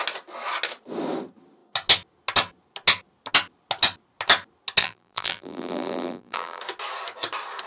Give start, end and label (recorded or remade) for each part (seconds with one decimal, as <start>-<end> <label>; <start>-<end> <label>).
0.0-4.8 recorded; 4.8-6.6 remade; 6.6-7.7 recorded